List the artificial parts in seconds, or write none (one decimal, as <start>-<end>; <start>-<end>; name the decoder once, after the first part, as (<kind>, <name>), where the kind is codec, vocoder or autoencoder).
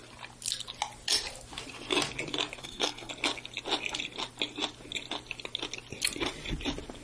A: 2.6-3.1 (codec, SNAC)